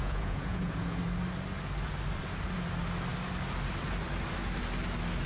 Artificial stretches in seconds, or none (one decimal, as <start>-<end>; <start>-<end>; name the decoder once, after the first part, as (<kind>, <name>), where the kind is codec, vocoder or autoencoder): 0.0-1.0 (vocoder, Vocos)